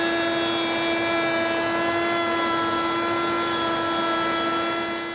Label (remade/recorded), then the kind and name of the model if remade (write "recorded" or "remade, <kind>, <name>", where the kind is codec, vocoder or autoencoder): recorded